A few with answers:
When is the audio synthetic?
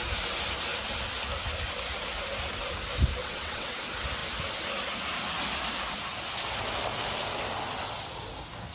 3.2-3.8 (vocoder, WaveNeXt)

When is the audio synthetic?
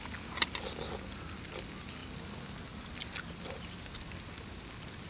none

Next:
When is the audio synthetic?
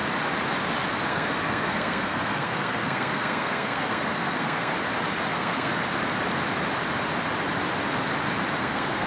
1.1-4.7 (codec, SNAC); 5.3-5.7; 8.6-9.1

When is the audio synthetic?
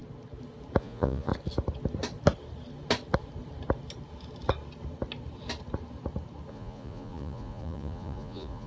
0.8-1.3 (vocoder, Vocos); 6.5-8.7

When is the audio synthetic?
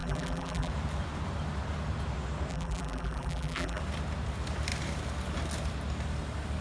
0.0-0.7 (vocoder, BigVGAN v2); 2.5-3.8